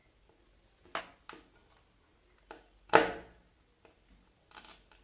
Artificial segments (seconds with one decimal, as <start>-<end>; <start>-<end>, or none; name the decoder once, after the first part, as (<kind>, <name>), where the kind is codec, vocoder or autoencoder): none